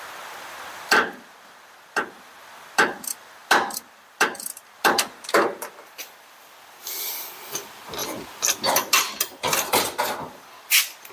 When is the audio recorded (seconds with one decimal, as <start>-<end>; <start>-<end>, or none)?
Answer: 0.0-11.1